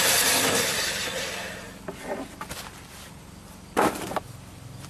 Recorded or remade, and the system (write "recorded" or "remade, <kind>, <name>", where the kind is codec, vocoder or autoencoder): recorded